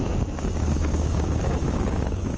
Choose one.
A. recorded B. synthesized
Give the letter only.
B